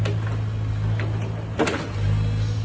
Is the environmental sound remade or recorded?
recorded